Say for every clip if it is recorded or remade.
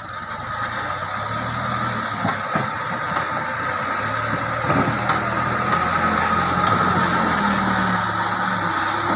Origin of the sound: recorded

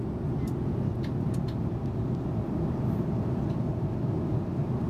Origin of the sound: recorded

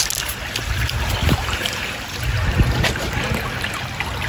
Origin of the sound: recorded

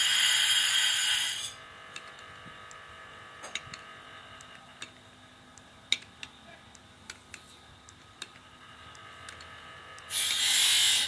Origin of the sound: recorded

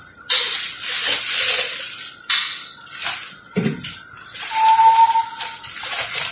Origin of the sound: recorded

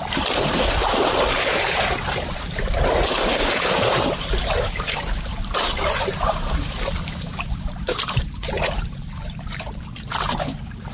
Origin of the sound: remade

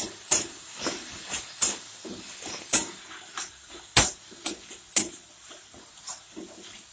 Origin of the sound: recorded